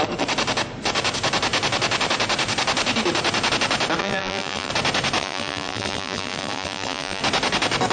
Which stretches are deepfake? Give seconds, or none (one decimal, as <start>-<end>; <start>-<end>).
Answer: 4.0-4.7; 5.2-7.2